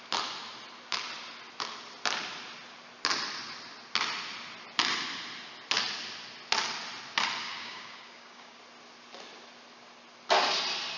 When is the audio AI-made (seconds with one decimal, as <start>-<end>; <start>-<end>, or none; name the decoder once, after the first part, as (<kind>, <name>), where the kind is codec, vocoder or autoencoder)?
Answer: 7.4-8.6 (codec, DAC)